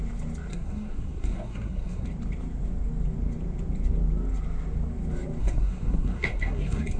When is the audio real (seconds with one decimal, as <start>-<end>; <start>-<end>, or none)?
0.0-0.5; 2.1-5.4